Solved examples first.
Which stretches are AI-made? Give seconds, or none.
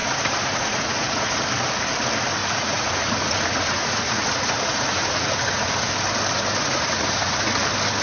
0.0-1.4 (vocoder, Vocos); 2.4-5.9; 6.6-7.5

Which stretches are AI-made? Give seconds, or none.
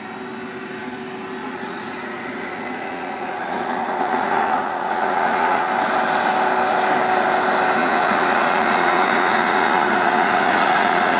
1.4-5.7 (vocoder, Vocos); 7.8-11.2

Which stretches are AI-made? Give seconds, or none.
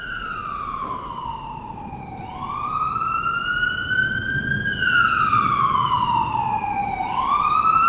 0.4-2.2 (vocoder, BigVGAN v2); 6.8-7.9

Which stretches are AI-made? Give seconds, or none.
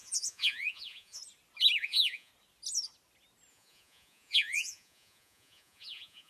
0.0-1.2 (vocoder, Vocos); 1.8-2.3; 3.5-6.3